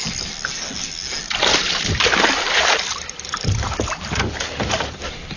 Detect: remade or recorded recorded